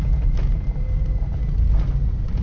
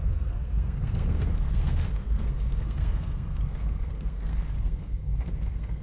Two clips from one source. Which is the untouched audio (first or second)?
first